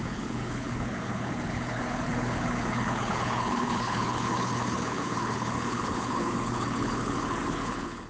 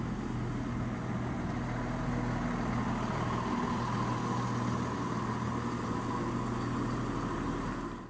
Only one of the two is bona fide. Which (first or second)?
second